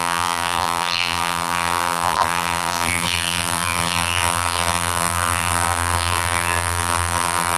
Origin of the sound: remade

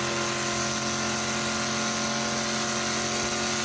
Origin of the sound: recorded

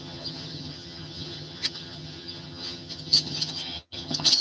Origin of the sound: remade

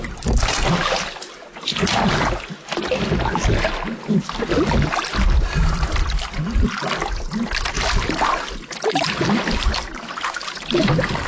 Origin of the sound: recorded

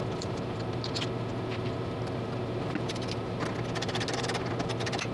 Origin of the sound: recorded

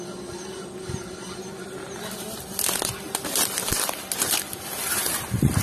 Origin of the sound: recorded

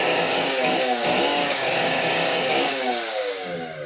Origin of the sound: remade